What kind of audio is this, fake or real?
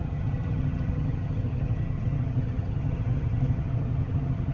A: fake